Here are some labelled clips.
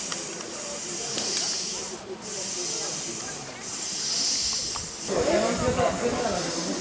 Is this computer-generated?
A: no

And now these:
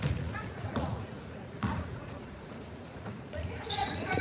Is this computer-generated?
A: yes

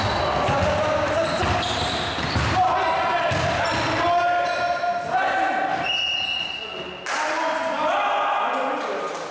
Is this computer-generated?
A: no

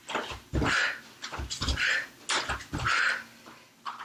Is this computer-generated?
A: no